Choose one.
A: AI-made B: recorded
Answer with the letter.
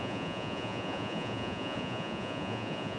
A